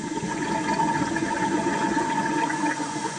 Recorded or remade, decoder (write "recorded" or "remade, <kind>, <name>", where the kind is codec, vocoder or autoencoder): remade, vocoder, Vocos